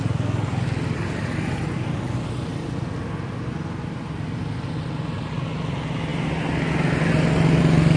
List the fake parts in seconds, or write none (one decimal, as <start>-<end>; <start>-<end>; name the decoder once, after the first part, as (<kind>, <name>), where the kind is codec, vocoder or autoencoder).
none